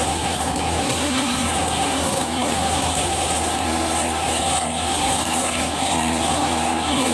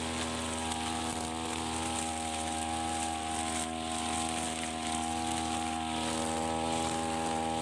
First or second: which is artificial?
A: first